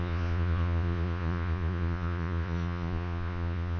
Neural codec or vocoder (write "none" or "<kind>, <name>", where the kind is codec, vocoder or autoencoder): vocoder, Vocos